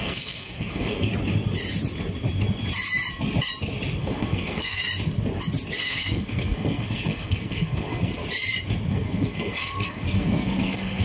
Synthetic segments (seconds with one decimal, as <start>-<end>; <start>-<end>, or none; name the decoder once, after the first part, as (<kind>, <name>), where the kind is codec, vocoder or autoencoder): 0.0-1.1 (codec, SNAC); 4.0-4.8; 5.8-8.2; 8.9-11.0